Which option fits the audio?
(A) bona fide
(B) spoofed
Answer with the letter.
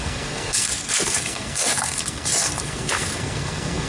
B